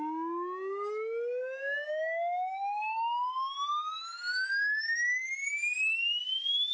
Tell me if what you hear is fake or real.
real